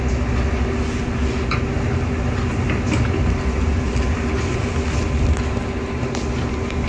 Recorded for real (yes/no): yes